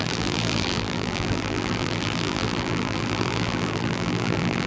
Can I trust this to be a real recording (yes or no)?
no